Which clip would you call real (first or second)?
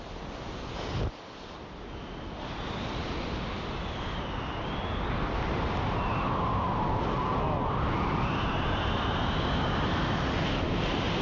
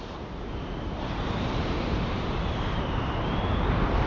first